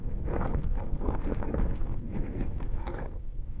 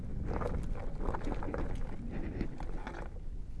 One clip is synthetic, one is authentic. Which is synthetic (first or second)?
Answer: first